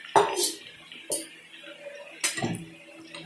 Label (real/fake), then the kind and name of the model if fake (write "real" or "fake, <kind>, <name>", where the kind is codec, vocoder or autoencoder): real